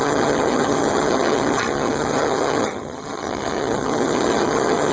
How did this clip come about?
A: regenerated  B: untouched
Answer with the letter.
A